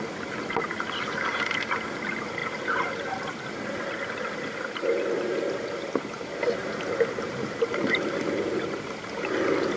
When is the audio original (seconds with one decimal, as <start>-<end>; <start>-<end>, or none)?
0.0-9.8